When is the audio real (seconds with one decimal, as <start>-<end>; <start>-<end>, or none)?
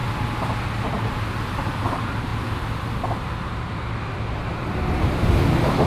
0.0-5.9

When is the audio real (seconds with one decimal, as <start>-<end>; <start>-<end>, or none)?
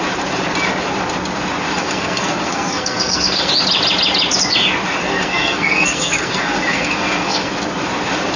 0.0-1.8; 3.5-5.1; 7.5-8.4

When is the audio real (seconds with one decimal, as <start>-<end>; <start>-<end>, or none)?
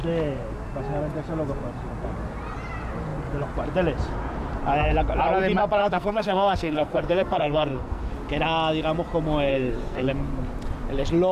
0.0-5.8; 8.1-9.5; 10.1-11.3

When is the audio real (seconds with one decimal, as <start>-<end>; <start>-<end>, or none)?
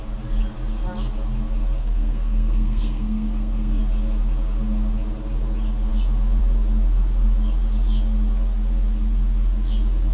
0.0-1.8; 3.8-10.1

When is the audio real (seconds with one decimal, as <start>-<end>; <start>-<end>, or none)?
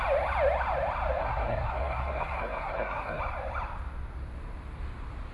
0.0-1.2; 3.2-5.3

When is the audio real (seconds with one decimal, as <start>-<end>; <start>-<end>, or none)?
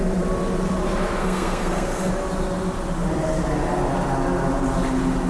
0.0-1.2; 2.1-5.3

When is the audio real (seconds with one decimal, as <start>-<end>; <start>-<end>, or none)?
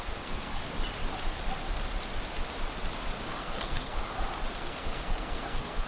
0.6-3.3; 4.0-4.5